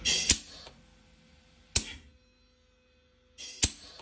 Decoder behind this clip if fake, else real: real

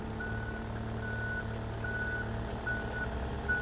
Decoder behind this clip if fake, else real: real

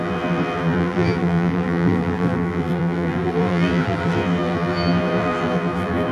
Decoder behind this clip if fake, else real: fake, vocoder, BigVGAN v2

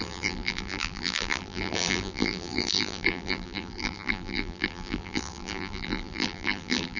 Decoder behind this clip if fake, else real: fake, vocoder, BigVGAN v2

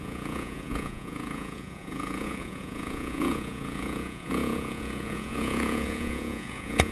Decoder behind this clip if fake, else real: fake, vocoder, Vocos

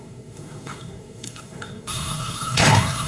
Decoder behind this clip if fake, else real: fake, codec, SNAC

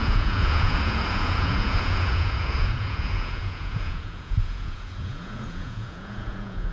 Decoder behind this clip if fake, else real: fake, vocoder, Vocos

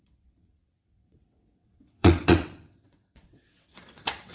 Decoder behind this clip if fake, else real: fake, vocoder, WaveNeXt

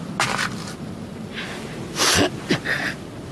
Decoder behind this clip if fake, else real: real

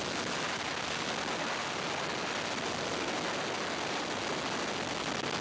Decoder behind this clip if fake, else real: real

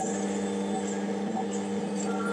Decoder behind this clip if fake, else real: real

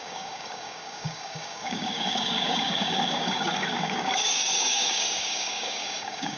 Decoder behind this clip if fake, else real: fake, codec, DAC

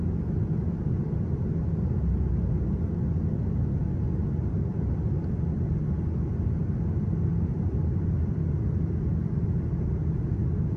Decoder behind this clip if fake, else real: real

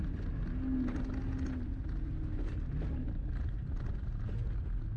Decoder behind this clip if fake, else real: real